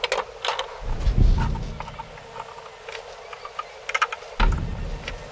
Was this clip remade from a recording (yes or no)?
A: no